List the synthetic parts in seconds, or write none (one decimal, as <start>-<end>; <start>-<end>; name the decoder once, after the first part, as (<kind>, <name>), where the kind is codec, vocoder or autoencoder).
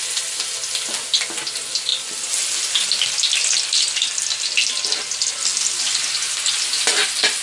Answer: none